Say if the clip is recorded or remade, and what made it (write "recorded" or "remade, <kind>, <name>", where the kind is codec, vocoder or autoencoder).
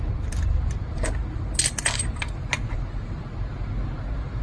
remade, vocoder, BigVGAN v2